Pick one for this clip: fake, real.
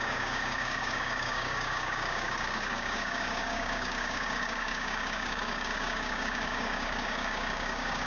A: fake